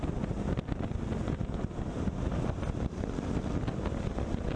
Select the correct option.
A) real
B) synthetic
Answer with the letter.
A